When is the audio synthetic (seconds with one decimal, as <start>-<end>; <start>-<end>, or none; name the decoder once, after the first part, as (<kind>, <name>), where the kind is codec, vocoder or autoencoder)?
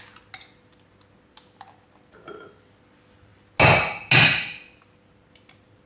none